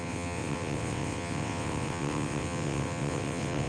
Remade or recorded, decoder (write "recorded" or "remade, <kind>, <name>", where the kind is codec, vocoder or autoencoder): remade, vocoder, WaveNeXt